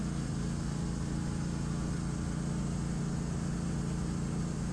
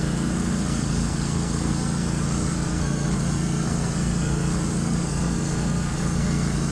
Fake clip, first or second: second